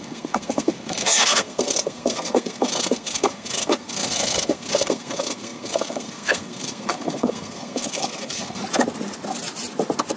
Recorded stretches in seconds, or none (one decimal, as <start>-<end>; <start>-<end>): 8.6-10.2